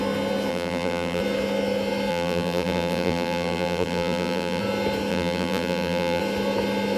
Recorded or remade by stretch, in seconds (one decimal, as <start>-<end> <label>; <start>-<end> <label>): 0.0-0.5 recorded; 0.5-1.2 remade; 1.2-2.1 recorded; 2.1-4.6 remade; 4.6-5.1 recorded; 5.1-6.2 remade; 6.2-7.0 recorded